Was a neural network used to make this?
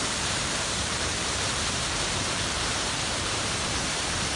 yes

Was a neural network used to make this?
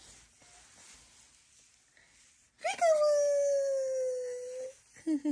no